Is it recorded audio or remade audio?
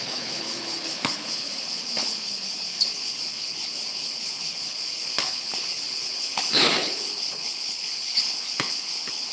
remade